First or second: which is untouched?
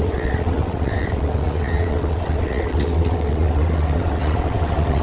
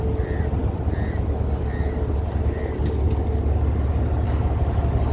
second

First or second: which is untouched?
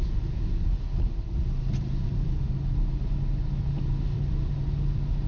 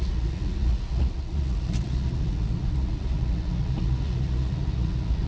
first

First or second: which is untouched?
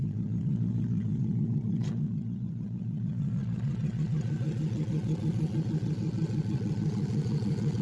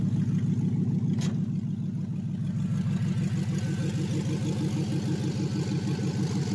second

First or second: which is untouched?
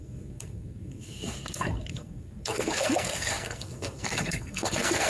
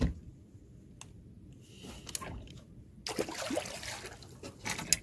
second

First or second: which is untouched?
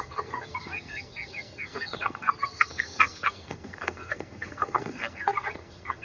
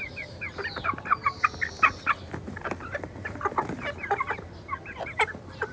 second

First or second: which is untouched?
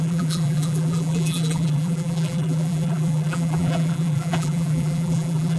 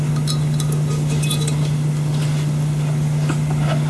second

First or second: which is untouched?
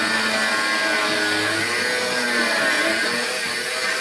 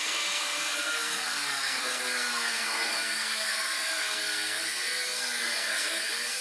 first